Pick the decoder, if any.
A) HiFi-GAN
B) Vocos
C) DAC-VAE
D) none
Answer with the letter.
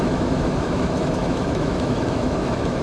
C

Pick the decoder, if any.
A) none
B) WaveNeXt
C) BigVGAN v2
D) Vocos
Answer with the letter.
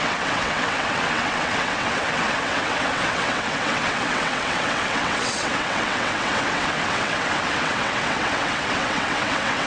B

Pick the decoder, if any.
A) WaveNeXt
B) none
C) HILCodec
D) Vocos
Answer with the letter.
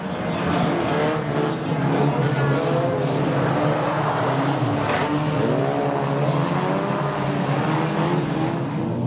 B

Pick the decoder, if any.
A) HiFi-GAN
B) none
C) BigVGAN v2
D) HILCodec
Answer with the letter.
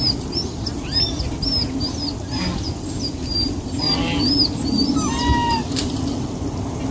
B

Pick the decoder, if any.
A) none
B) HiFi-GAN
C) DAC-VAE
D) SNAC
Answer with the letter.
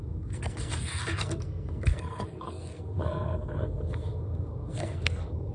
D